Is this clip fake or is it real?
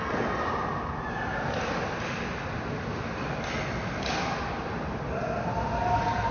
real